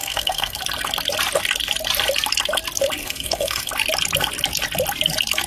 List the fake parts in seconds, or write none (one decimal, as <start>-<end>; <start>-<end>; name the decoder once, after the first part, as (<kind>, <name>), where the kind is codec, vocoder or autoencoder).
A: 0.0-0.6 (codec, SNAC); 3.0-3.7